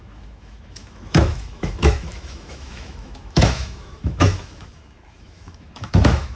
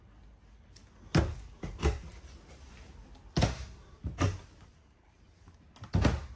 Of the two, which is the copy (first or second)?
first